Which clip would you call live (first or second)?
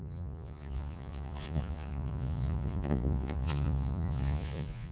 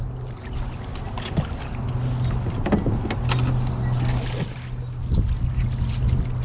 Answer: second